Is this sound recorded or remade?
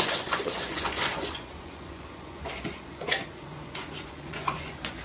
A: remade